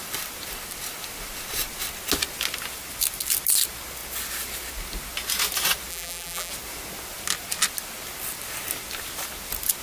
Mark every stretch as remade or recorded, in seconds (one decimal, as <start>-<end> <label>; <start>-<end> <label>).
0.0-5.9 recorded; 5.9-6.5 remade; 6.5-9.8 recorded